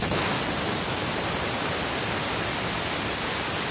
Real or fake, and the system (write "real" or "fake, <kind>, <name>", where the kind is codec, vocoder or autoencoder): real